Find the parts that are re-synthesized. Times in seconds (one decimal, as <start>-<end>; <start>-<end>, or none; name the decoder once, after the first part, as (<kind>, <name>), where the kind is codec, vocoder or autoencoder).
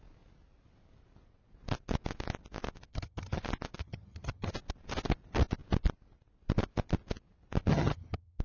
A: 2.9-3.4 (vocoder, HiFi-GAN); 3.8-4.5; 7.7-8.4